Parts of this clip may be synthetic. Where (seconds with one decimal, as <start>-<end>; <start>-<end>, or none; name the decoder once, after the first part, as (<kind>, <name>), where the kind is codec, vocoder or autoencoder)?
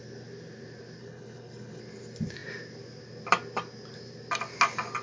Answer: 1.0-1.8 (codec, HILCodec)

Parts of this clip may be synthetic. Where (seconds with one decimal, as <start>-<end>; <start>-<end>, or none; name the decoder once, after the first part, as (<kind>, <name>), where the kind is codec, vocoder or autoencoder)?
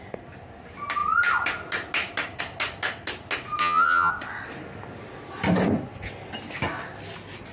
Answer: 3.6-4.1 (vocoder, HiFi-GAN)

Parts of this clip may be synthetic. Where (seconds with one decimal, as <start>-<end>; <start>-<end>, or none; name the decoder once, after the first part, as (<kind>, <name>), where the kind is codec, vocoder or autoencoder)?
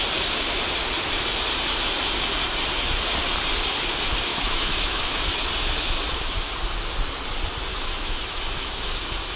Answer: 4.3-5.2 (autoencoder, DAC-VAE); 7.7-9.0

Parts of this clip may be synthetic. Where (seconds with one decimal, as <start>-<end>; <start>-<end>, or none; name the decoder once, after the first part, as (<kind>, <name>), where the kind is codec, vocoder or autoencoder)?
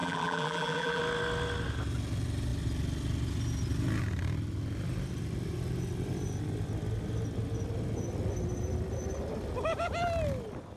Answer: 0.0-1.0 (vocoder, BigVGAN v2)